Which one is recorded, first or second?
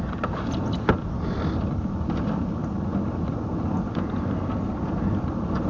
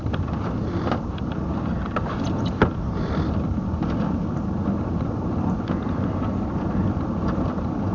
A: first